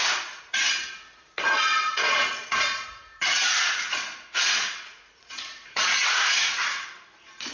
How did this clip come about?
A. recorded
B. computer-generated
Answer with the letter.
B